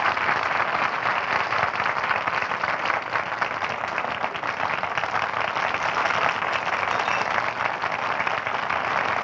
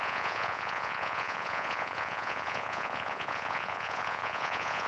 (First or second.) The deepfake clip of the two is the second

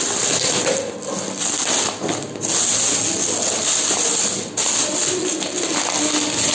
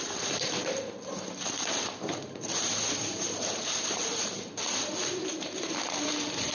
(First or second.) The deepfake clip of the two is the second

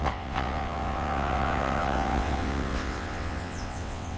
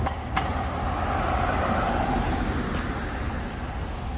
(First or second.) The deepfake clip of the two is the first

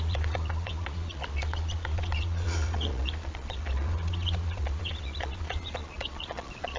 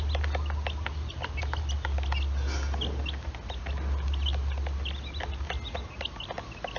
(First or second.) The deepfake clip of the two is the first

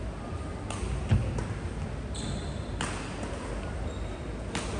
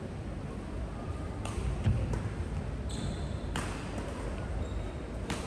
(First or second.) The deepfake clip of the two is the second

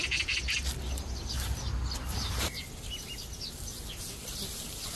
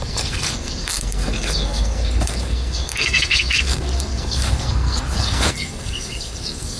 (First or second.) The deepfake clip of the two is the second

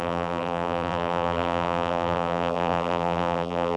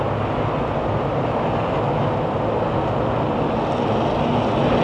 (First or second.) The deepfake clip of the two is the first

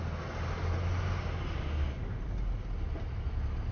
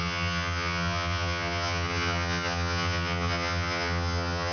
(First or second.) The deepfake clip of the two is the second